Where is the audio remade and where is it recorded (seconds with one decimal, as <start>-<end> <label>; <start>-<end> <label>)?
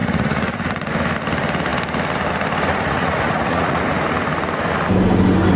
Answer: 0.0-0.9 remade; 0.9-2.7 recorded; 2.7-3.8 remade; 3.8-5.6 recorded